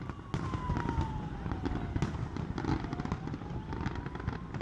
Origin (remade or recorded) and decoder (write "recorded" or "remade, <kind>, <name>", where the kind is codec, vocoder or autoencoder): recorded